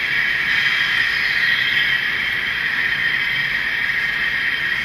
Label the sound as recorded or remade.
recorded